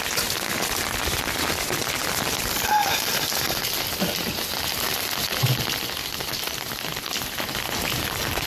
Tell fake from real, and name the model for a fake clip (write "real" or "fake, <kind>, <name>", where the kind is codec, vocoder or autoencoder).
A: real